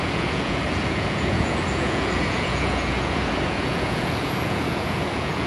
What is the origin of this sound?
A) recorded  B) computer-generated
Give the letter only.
B